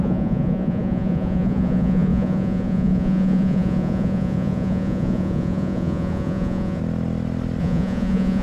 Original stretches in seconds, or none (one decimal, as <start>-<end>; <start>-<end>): 6.8-7.6